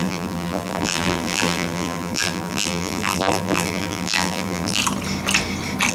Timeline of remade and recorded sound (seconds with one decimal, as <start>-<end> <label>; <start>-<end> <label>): 0.0-4.8 remade; 4.8-5.9 recorded